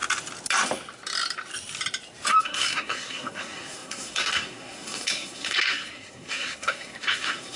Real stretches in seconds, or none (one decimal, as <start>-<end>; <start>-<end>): 0.0-2.4

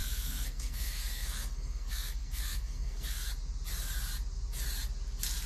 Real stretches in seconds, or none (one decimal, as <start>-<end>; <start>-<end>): 3.3-5.5

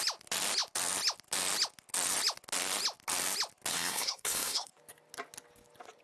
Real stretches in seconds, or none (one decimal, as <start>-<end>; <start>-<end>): 0.0-3.7; 4.7-6.0

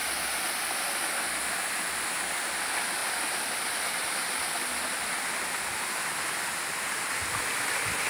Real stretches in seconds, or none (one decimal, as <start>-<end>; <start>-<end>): 0.0-8.1

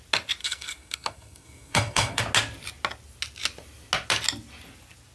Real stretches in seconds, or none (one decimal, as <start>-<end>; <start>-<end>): 0.0-0.4; 2.2-5.1

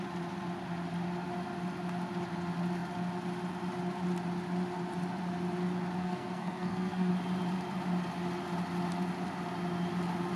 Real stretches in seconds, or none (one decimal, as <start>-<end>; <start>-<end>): 0.0-6.0; 7.1-10.4

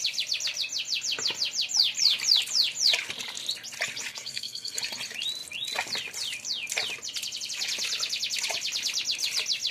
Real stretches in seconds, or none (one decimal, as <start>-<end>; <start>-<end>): 0.0-4.1; 4.8-9.7